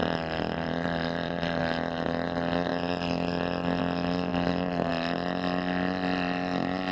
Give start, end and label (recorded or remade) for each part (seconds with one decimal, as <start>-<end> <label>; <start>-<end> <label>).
0.0-1.6 remade; 1.6-4.3 recorded; 4.3-4.9 remade; 4.9-6.9 recorded